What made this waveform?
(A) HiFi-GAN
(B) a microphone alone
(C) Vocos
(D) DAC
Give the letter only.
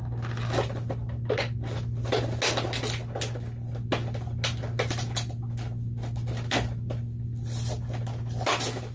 B